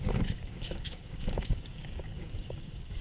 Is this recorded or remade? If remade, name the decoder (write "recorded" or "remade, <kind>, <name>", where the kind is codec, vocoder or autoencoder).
remade, codec, DAC